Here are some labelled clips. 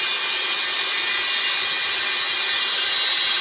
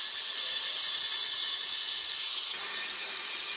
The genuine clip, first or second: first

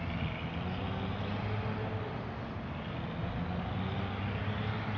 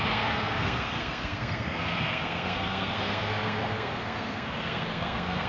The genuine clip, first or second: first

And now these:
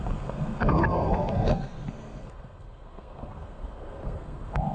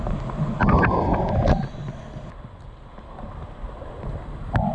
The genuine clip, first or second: second